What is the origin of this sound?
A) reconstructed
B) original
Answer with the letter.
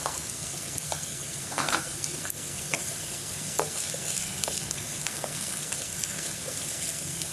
A